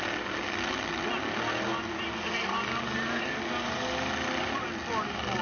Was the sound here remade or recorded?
recorded